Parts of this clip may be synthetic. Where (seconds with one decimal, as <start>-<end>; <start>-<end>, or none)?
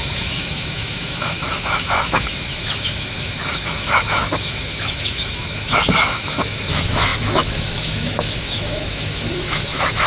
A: 0.0-10.1